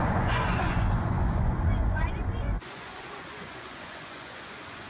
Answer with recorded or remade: remade